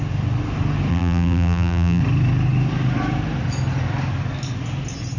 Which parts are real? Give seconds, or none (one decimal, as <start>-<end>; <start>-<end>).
0.0-0.9; 2.0-5.2